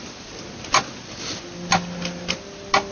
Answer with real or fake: real